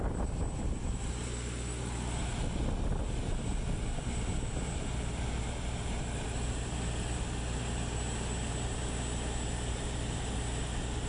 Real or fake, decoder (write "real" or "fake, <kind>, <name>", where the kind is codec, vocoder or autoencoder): real